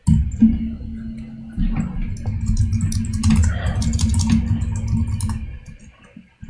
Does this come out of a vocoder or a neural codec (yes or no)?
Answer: no